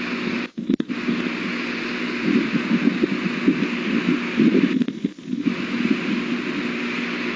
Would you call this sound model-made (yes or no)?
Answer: no